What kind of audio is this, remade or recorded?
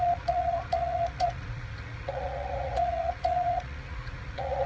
remade